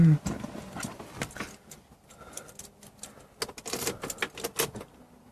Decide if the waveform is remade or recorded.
recorded